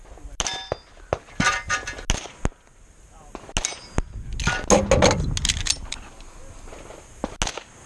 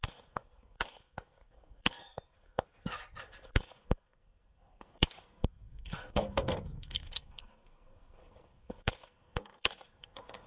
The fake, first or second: second